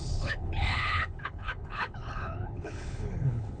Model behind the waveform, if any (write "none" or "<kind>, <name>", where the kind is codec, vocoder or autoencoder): codec, HILCodec